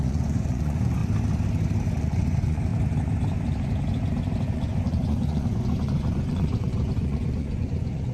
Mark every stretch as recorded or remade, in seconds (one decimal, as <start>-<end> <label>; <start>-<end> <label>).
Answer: 0.0-1.0 remade; 1.0-1.9 recorded; 1.9-2.7 remade; 2.7-4.5 recorded; 4.5-8.1 remade